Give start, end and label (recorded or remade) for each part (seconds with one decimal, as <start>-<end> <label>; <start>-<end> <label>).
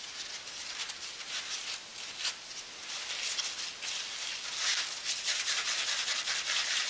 0.0-6.9 recorded